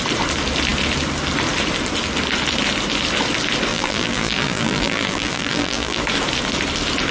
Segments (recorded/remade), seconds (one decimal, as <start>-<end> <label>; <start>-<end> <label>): 0.0-3.7 recorded; 3.7-6.0 remade; 6.0-7.1 recorded